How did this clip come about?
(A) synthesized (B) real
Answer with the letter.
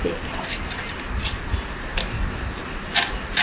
B